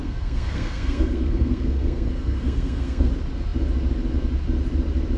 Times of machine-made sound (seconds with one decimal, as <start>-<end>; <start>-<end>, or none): 0.0-3.1